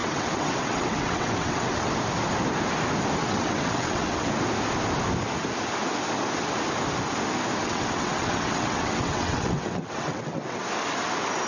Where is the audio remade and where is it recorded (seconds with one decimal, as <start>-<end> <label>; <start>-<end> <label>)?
0.0-1.9 remade; 1.9-3.2 recorded; 3.2-4.3 remade; 4.3-7.6 recorded; 7.6-10.6 remade; 10.6-11.5 recorded